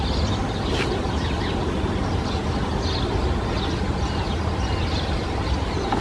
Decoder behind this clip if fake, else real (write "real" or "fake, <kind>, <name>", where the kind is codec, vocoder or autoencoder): real